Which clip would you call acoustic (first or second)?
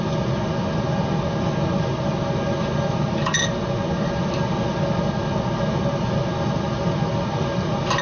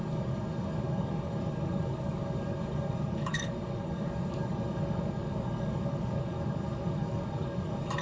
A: first